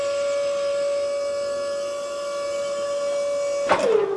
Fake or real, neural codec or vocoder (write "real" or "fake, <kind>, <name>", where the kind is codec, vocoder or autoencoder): real